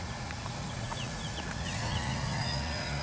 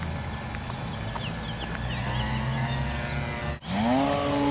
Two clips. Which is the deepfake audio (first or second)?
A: first